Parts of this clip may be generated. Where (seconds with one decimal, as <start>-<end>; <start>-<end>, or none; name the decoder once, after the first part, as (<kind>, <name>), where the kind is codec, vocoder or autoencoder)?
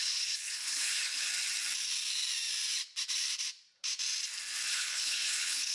0.0-1.3 (codec, HILCodec); 4.7-5.7